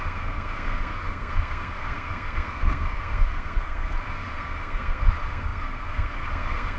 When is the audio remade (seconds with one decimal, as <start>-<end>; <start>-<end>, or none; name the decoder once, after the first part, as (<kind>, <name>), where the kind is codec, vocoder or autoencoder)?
0.0-6.8 (codec, SNAC)